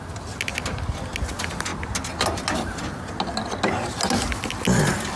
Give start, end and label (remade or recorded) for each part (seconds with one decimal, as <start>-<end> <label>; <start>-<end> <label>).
0.0-5.2 recorded